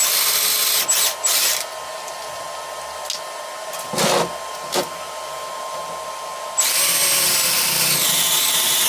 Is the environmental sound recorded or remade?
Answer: recorded